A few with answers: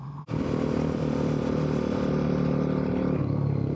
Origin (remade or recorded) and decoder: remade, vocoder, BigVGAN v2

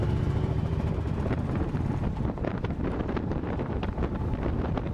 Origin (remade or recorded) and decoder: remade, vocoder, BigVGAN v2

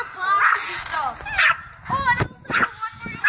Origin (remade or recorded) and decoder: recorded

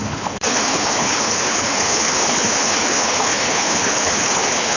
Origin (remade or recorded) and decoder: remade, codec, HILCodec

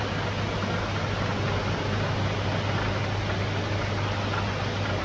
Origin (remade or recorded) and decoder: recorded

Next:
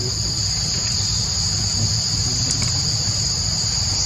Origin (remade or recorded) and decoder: recorded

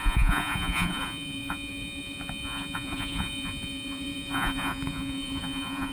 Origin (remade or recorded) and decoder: remade, vocoder, Vocos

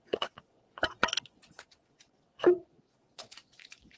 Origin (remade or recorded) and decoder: remade, vocoder, Vocos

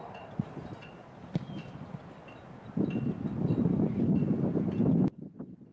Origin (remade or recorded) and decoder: recorded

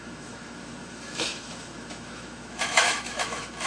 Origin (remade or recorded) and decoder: remade, autoencoder, DAC-VAE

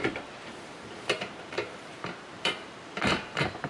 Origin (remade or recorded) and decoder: remade, vocoder, BigVGAN v2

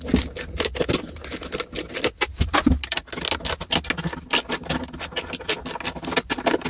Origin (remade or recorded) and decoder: recorded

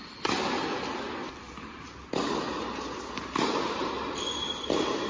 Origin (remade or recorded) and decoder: recorded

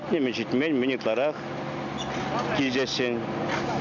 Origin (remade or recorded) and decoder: recorded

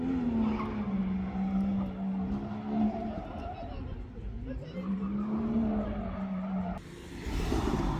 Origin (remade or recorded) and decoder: recorded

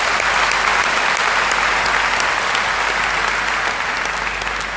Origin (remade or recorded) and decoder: recorded